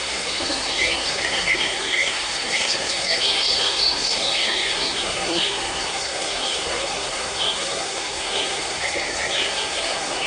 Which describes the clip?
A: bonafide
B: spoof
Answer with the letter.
B